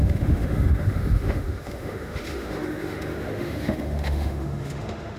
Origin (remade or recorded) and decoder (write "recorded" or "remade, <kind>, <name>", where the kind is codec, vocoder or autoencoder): remade, autoencoder, DAC-VAE